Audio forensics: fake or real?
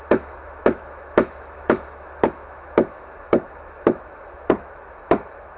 fake